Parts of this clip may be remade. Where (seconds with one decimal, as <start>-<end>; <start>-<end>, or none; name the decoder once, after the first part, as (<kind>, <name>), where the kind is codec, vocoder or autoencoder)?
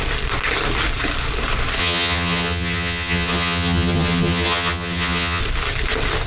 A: 1.8-5.4 (vocoder, HiFi-GAN)